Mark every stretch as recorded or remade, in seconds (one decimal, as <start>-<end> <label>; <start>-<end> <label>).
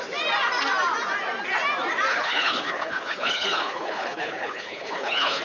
0.0-2.1 recorded; 2.1-5.4 remade